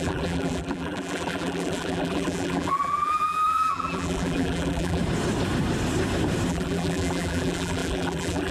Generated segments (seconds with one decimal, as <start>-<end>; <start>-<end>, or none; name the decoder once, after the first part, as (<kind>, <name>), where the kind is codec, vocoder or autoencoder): 0.0-5.0 (vocoder, BigVGAN v2); 6.5-8.5